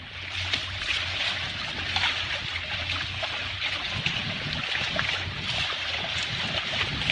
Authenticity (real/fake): real